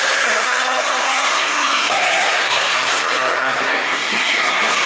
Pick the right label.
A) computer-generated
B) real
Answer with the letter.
A